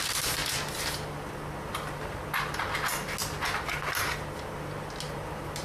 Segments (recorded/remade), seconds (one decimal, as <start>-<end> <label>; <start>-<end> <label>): 0.0-5.6 recorded